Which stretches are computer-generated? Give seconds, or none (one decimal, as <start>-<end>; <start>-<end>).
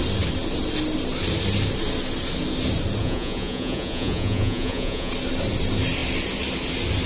3.0-5.1